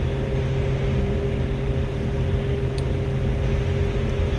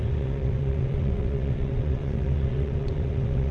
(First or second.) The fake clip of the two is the second